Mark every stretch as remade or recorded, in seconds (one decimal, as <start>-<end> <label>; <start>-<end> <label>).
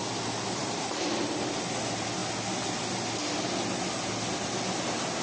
0.0-0.6 recorded; 0.6-1.3 remade; 1.3-5.2 recorded